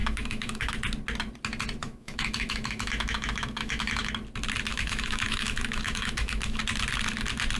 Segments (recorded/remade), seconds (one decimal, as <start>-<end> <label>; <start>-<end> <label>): 0.0-0.7 remade; 0.7-1.8 recorded; 1.8-4.1 remade; 4.1-4.7 recorded; 4.7-6.6 remade; 6.6-7.6 recorded